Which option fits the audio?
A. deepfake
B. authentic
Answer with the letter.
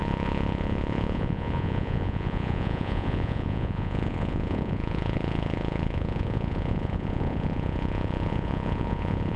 A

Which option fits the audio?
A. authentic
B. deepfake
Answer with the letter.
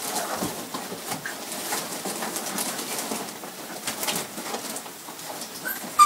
A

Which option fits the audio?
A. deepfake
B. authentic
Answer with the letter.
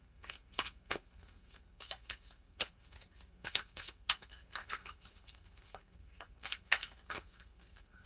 A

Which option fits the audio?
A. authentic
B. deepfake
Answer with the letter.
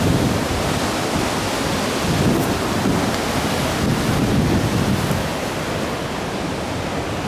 A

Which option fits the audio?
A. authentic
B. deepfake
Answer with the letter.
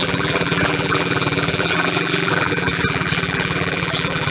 B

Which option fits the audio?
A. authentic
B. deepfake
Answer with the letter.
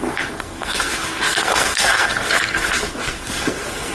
B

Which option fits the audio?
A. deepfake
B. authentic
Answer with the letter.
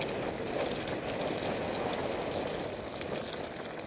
B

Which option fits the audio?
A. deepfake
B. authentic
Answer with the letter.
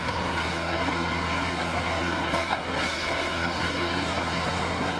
A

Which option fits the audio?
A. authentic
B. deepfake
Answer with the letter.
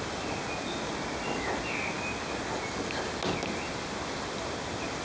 A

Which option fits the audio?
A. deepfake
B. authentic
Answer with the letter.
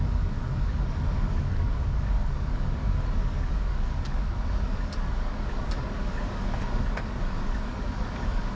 A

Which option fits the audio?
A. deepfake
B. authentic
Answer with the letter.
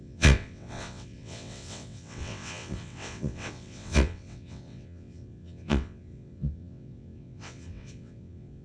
A